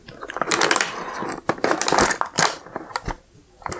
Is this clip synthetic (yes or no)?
no